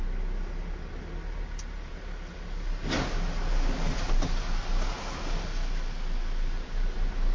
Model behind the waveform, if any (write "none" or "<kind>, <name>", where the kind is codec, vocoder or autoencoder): none